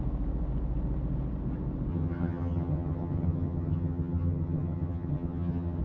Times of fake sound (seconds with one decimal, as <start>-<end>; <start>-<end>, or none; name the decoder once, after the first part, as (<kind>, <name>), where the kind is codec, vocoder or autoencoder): 1.9-5.8 (vocoder, HiFi-GAN)